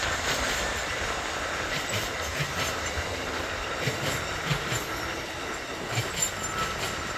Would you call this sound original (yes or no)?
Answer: yes